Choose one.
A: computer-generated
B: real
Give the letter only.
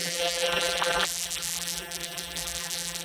A